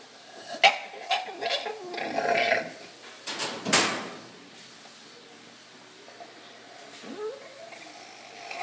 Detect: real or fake real